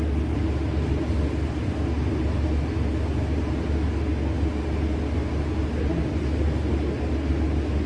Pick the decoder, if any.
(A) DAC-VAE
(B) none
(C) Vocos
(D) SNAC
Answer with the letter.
B